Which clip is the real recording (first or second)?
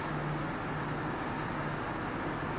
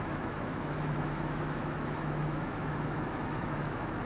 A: first